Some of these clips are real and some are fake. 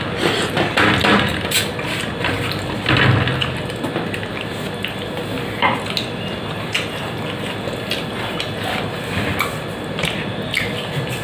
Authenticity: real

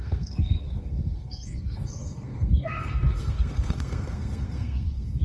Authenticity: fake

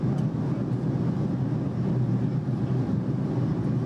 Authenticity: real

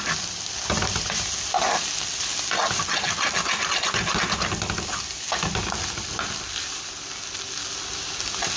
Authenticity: real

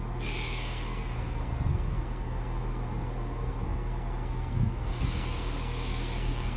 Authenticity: fake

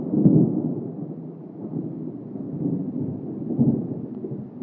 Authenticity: real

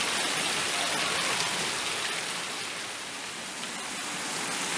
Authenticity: real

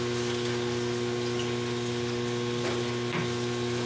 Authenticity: real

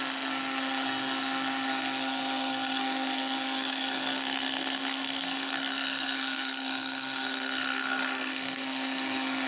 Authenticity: fake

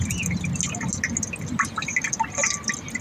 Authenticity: real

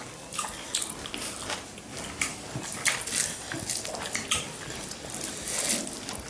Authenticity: real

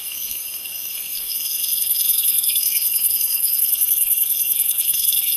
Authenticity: fake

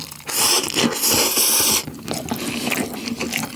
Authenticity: real